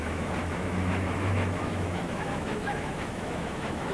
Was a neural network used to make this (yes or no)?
yes